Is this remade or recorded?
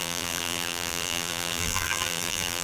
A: remade